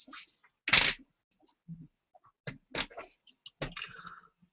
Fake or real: real